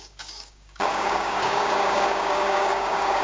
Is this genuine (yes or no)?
no